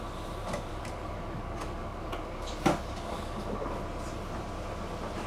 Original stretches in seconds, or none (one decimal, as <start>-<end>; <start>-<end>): 0.0-0.7; 3.8-5.3